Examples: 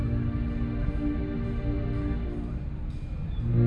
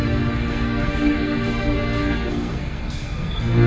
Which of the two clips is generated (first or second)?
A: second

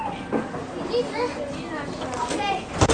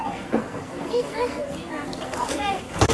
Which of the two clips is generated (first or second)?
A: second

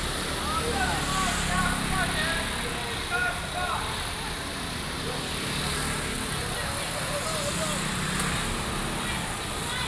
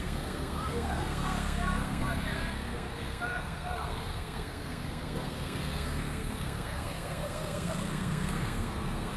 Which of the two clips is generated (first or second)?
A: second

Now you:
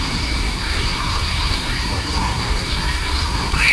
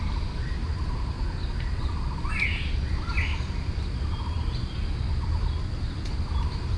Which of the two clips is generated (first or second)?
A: first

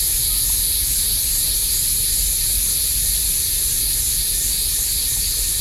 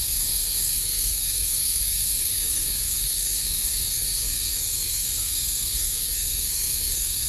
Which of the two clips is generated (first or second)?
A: second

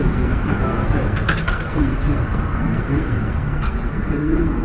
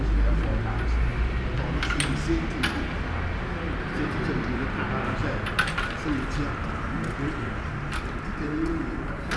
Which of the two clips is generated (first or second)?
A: first